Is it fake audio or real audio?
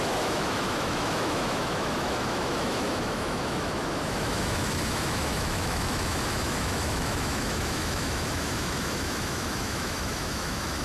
fake